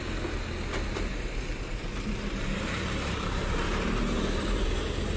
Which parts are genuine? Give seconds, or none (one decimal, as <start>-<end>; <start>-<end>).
0.0-0.9; 4.0-5.2